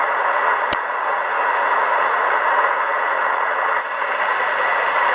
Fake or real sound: fake